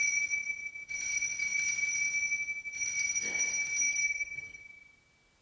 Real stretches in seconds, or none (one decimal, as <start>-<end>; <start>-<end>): 0.0-3.9; 4.6-5.4